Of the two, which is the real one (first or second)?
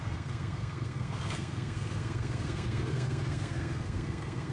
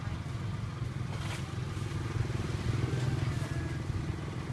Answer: second